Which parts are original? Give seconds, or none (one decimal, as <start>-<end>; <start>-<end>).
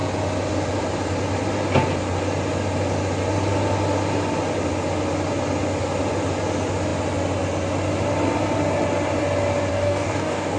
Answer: 0.0-9.7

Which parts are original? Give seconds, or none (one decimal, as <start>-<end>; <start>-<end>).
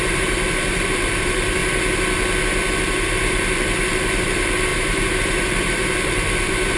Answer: 1.6-2.9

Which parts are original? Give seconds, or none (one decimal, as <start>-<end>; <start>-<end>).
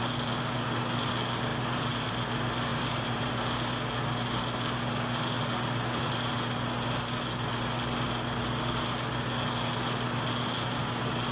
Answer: 0.0-1.5; 2.1-2.7; 3.3-11.3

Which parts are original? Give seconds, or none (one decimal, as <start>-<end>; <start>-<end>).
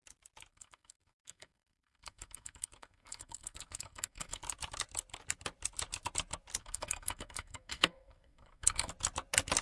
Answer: 0.0-0.5; 4.4-6.6; 8.9-9.6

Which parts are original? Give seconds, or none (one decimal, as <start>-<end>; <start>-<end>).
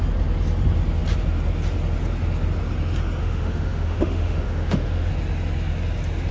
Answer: 0.0-3.2; 5.1-6.3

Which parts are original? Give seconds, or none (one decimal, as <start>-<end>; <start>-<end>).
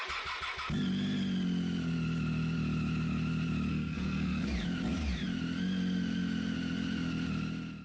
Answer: 0.0-3.7; 4.5-7.8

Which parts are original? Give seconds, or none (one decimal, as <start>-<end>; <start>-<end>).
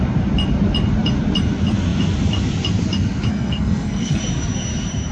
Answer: 0.0-3.3; 4.2-5.1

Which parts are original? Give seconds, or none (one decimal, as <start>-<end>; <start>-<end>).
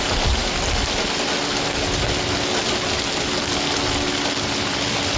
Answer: 0.0-5.2